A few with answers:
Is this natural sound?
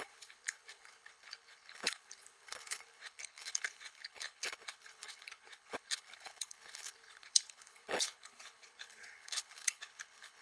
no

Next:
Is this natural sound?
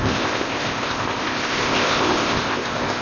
no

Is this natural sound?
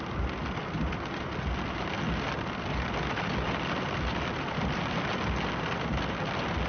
yes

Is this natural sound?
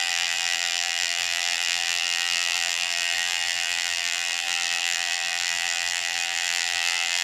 no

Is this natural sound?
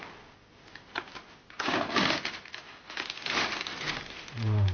yes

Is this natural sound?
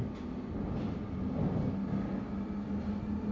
yes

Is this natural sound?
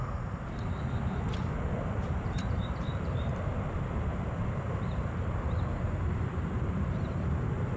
no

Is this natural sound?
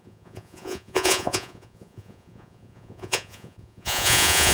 no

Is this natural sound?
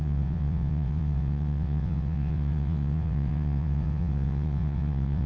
no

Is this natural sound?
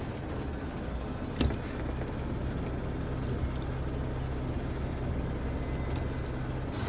yes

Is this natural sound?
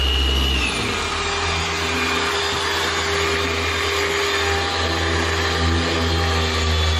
yes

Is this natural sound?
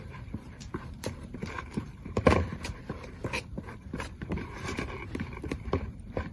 no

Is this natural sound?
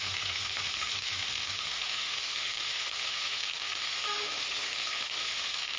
no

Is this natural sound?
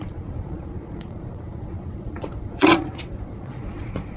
no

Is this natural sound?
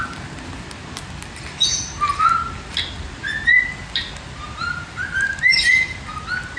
yes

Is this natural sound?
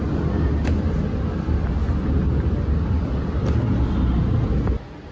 yes